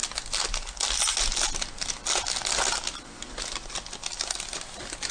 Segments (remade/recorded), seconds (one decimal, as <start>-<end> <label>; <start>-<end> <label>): 0.0-5.1 recorded